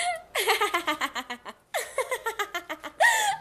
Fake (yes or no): no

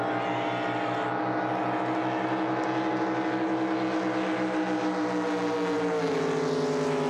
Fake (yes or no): no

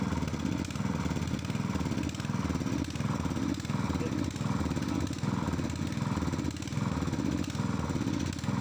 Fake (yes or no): no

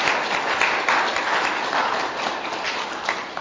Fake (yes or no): no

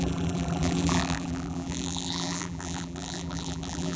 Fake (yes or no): yes